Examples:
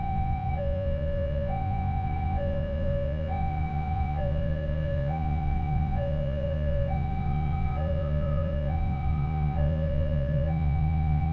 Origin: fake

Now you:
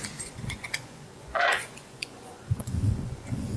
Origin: fake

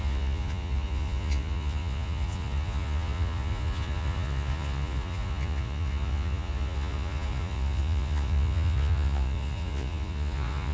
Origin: fake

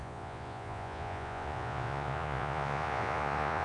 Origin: fake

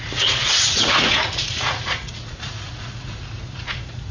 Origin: fake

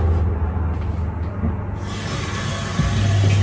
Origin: real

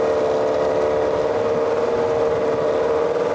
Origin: real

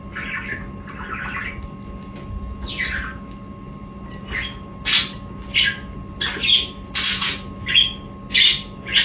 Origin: real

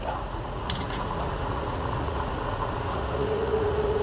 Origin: fake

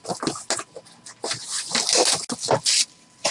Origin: real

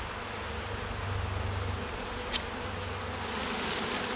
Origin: real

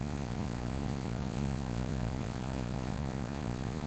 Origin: fake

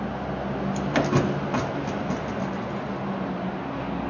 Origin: real